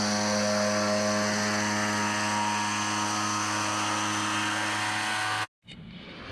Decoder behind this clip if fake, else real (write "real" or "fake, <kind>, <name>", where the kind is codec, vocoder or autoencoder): real